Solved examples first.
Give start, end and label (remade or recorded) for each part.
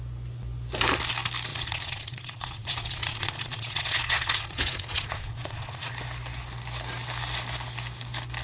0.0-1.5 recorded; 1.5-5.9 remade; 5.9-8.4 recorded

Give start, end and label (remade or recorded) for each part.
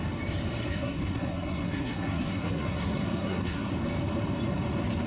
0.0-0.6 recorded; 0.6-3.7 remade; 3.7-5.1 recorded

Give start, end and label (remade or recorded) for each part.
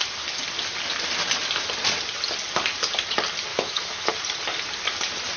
0.0-3.5 recorded; 3.5-4.1 remade; 4.1-5.4 recorded